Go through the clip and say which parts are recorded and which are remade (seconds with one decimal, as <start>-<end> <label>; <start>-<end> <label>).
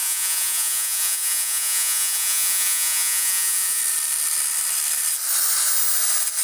0.0-3.8 remade; 3.8-6.4 recorded